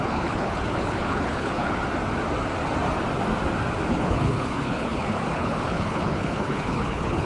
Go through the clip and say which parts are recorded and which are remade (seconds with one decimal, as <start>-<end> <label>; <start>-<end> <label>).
0.0-1.8 remade; 1.8-3.9 recorded; 3.9-7.3 remade